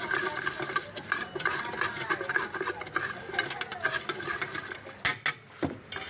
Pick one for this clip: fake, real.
real